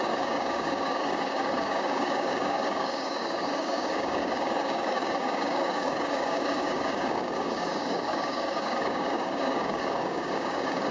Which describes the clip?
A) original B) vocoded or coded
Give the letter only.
B